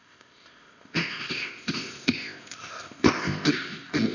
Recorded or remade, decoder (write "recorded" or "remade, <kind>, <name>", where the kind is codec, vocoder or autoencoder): remade, codec, ZipCodec